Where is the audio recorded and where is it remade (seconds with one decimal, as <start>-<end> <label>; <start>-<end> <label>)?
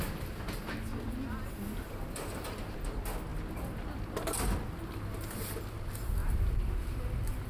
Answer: 0.0-7.5 recorded